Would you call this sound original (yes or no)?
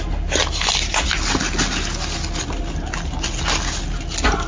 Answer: yes